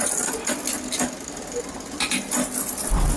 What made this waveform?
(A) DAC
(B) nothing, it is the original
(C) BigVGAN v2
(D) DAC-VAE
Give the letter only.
B